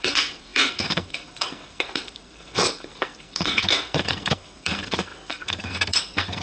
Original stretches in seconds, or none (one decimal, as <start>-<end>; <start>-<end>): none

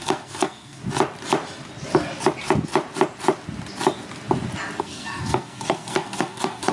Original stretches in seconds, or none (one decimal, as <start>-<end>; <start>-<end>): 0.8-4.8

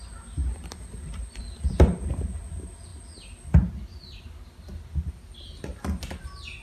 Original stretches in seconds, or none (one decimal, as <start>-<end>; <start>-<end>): 0.0-6.6